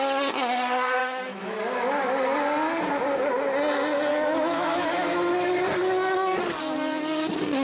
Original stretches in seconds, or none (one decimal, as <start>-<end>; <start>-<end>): 0.0-1.0; 1.6-4.1; 5.3-7.6

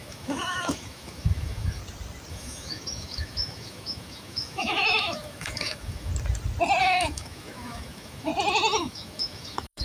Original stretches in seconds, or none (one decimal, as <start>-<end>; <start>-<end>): 1.8-2.3; 6.1-6.8; 8.3-8.8